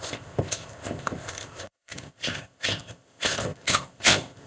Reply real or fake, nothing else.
fake